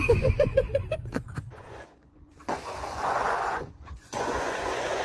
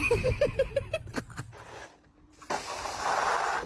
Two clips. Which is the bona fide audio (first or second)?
second